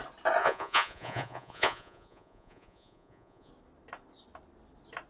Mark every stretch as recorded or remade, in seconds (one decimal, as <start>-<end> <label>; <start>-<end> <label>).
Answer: 0.0-0.4 recorded; 0.4-3.5 remade; 3.5-5.1 recorded